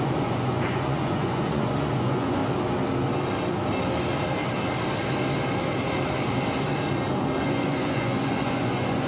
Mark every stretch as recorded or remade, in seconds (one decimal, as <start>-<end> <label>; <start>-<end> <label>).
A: 0.0-2.4 remade; 2.4-7.4 recorded; 7.4-9.1 remade